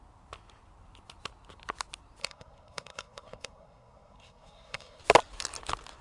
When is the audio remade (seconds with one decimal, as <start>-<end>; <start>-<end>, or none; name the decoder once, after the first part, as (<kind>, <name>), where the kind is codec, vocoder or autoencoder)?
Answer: 2.2-5.0 (codec, SNAC)